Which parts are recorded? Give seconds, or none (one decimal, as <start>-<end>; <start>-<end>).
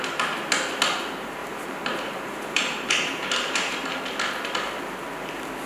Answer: 0.0-1.4; 4.0-5.7